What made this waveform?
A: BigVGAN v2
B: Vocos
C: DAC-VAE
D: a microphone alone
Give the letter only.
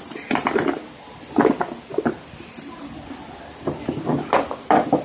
D